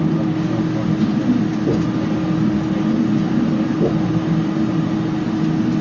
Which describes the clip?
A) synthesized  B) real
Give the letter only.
B